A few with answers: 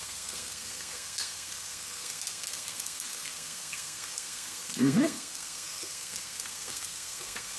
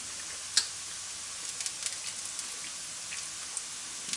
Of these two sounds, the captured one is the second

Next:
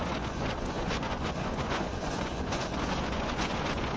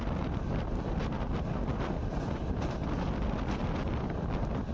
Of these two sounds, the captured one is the second